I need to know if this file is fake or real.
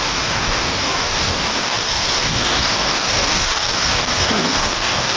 fake